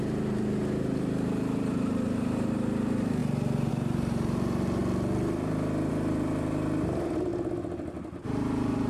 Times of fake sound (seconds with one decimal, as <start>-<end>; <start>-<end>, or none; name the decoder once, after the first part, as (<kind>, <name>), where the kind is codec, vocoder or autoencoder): 0.0-4.8 (vocoder, BigVGAN v2); 5.9-7.3; 8.0-8.9